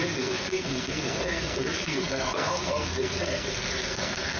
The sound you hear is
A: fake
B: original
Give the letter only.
A